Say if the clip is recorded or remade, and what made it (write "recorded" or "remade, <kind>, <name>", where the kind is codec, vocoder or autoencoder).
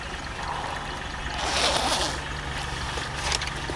recorded